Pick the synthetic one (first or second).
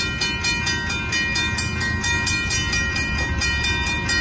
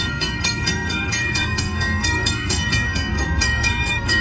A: second